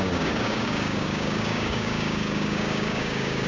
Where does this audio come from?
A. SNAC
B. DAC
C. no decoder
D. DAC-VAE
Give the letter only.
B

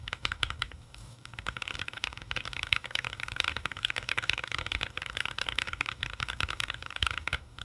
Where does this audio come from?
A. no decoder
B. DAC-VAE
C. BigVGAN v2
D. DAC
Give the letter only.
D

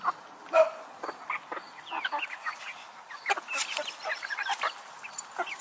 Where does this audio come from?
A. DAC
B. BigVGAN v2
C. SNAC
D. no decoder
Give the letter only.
D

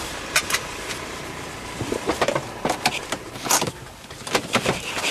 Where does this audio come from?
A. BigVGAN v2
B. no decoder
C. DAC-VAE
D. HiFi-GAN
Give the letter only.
A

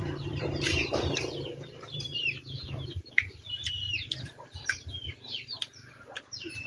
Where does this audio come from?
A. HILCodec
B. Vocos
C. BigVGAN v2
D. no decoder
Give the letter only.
C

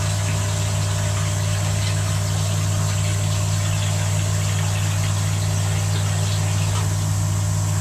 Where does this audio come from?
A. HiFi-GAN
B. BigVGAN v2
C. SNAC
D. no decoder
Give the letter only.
D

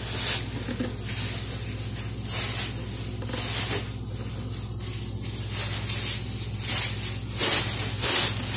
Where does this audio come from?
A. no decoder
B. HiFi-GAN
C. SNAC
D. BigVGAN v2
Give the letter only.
A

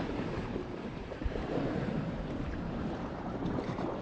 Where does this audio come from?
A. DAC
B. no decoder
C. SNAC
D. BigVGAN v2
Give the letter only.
D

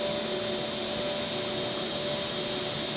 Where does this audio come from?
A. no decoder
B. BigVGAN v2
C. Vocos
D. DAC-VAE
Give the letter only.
A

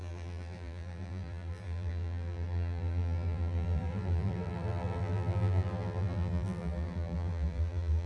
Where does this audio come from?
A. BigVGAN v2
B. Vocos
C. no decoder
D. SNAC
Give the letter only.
A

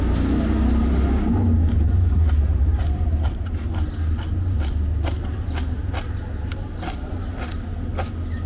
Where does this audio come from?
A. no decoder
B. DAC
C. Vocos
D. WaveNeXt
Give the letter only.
A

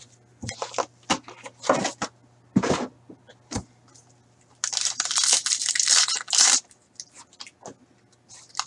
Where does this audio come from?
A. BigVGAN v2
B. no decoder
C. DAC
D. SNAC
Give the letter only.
B